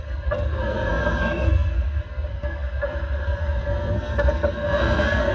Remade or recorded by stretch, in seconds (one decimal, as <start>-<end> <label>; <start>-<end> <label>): 0.0-5.3 remade